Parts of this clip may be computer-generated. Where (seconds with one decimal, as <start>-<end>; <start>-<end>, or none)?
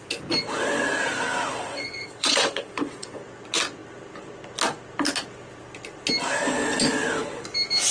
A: 1.5-3.2